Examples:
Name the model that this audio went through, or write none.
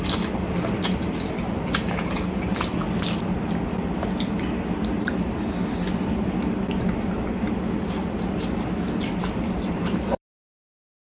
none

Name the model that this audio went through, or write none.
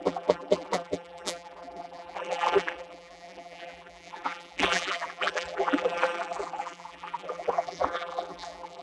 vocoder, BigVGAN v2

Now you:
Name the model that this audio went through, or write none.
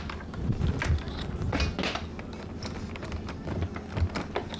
none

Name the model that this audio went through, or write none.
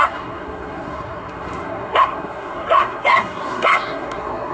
codec, SNAC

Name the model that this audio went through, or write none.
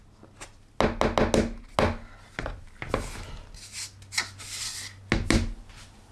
none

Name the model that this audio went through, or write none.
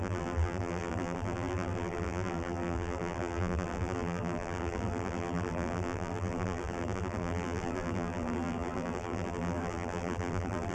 vocoder, BigVGAN v2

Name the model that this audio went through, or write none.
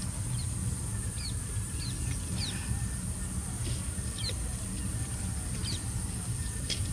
none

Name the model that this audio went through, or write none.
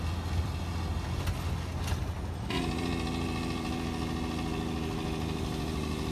none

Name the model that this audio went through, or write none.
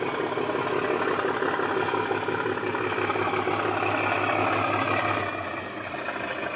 none